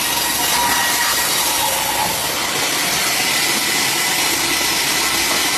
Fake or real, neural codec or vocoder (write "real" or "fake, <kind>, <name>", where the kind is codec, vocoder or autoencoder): real